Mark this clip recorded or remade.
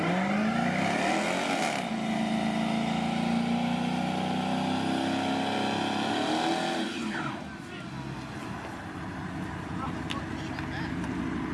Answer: recorded